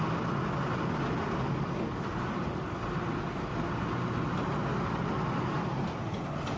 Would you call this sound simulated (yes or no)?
no